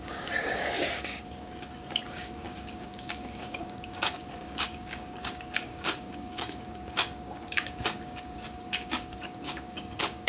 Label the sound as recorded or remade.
remade